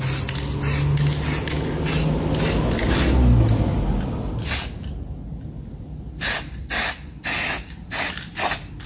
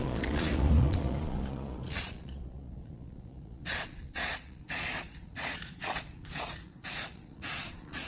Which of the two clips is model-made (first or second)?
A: second